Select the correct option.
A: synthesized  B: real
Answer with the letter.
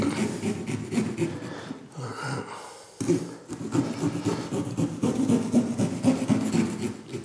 B